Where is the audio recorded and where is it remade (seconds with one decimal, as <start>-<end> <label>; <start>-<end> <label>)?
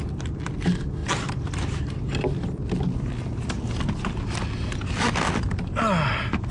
0.0-6.5 recorded